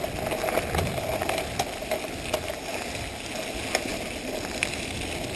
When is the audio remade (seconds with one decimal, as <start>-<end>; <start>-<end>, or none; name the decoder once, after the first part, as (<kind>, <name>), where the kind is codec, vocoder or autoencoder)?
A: none